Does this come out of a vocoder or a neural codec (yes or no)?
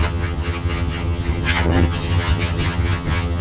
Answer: yes